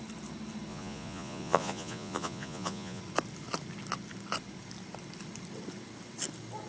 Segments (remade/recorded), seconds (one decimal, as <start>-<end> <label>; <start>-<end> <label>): 0.0-0.7 recorded; 0.7-3.0 remade; 3.0-6.7 recorded